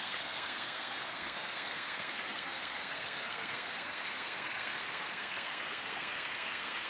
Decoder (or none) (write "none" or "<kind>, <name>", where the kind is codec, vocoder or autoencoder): codec, SNAC